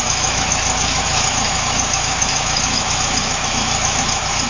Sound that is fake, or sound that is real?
fake